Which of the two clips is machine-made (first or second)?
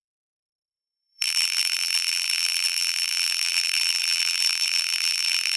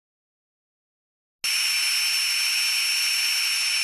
first